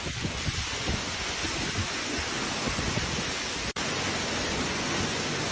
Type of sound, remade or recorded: remade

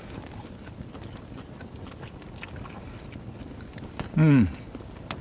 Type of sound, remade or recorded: recorded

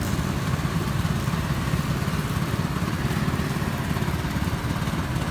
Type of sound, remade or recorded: recorded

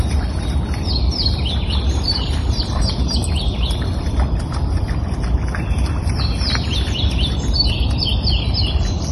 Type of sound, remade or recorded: remade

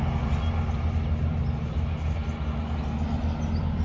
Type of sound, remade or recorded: recorded